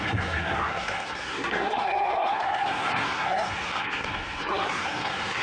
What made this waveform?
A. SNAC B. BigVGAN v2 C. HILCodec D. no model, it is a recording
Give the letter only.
A